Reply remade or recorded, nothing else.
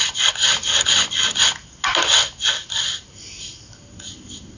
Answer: recorded